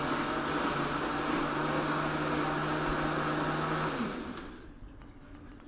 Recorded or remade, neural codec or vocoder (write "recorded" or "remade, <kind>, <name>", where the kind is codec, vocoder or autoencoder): recorded